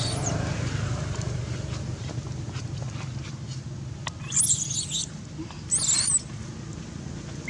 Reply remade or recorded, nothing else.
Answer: recorded